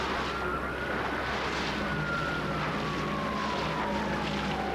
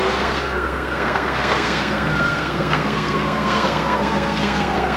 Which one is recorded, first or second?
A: first